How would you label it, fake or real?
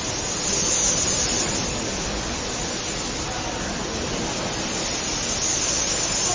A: real